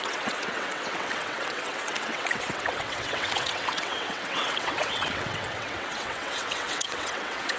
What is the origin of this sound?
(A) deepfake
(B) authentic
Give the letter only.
A